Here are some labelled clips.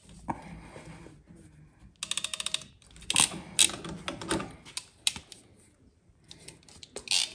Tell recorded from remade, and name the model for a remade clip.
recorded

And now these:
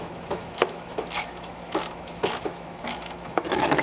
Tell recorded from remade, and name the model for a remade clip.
remade, autoencoder, DAC-VAE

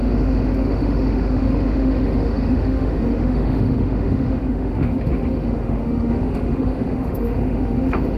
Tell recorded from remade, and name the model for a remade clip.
remade, autoencoder, DAC-VAE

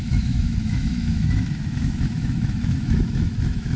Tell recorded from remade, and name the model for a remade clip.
remade, autoencoder, DAC-VAE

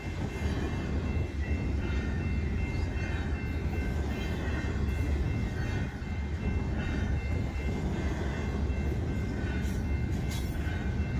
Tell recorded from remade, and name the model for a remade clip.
recorded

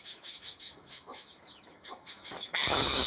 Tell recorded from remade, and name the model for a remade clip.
remade, autoencoder, DAC-VAE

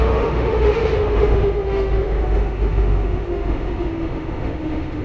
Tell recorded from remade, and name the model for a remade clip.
remade, autoencoder, DAC-VAE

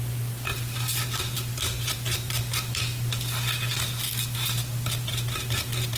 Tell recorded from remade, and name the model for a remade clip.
recorded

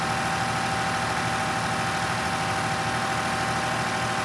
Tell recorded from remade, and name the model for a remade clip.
recorded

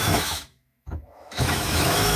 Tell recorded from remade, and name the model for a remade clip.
remade, autoencoder, DAC-VAE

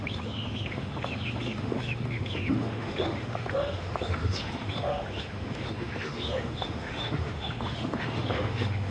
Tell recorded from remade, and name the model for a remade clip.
remade, autoencoder, DAC-VAE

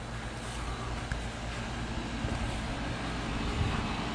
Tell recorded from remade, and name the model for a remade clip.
recorded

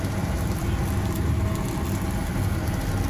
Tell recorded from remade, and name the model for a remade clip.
recorded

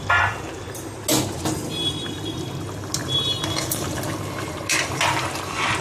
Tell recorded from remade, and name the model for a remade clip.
recorded